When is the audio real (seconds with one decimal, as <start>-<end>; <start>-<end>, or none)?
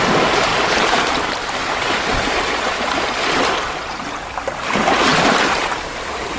0.0-0.5; 1.1-1.6; 2.3-5.1